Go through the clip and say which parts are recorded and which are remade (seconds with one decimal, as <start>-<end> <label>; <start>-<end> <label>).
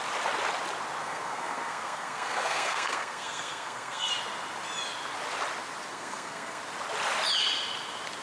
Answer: 0.0-1.0 recorded; 1.0-4.1 remade; 4.1-5.9 recorded; 5.9-6.6 remade; 6.6-8.2 recorded